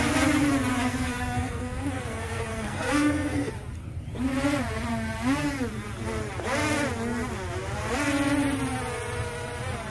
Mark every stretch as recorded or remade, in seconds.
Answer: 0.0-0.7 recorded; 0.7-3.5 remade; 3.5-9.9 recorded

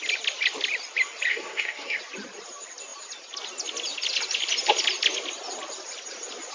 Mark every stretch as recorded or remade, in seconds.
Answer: 0.0-1.3 recorded; 1.3-2.0 remade; 2.0-6.5 recorded

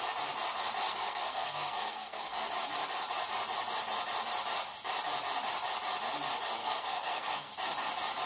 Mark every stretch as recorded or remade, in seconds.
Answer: 0.0-0.9 recorded; 0.9-2.5 remade; 2.5-6.6 recorded; 6.6-7.5 remade; 7.5-8.3 recorded

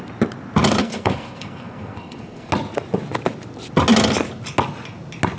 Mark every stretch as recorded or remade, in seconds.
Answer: 0.0-0.8 recorded; 0.8-2.5 remade; 2.5-5.4 recorded

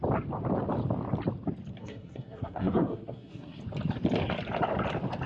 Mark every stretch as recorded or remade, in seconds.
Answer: 0.0-1.8 recorded; 1.8-3.6 remade; 3.6-5.3 recorded

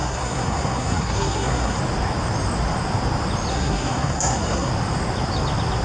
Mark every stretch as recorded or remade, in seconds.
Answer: 0.0-1.8 remade; 1.8-3.5 recorded; 3.5-4.7 remade; 4.7-5.8 recorded